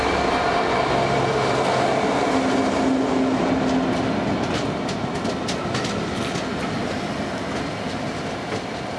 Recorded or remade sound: recorded